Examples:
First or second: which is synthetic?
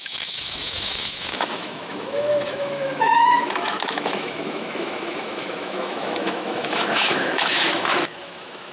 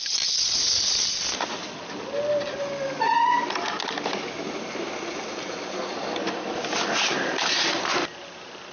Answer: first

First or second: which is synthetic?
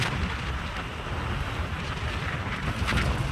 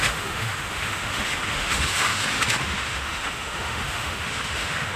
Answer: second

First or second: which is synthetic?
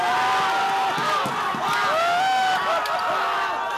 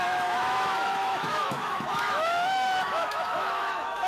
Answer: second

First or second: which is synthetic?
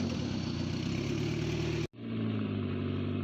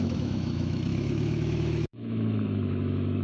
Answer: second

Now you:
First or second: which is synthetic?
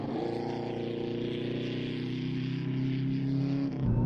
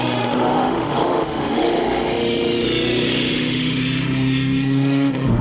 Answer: second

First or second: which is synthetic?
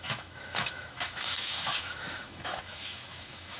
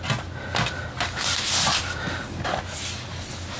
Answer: first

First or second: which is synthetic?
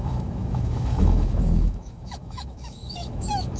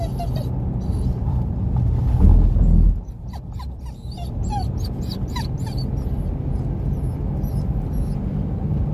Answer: first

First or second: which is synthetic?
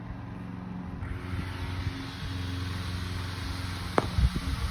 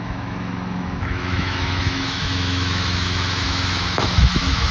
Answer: second